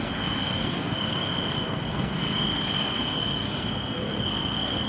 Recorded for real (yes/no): no